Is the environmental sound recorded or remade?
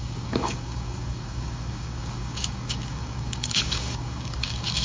remade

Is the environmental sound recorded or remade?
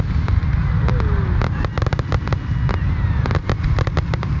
recorded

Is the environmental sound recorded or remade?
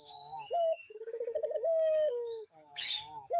remade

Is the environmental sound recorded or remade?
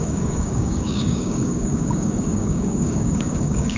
remade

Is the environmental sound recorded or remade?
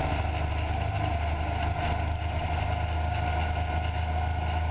recorded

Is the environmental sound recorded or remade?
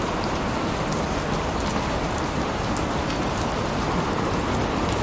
recorded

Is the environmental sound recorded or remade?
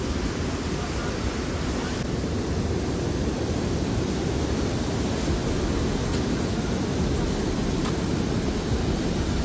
recorded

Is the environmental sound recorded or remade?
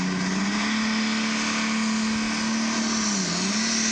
recorded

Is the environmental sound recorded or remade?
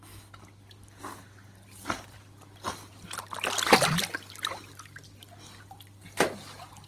recorded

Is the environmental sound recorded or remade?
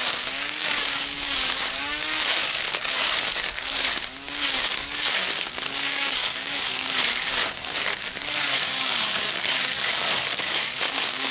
remade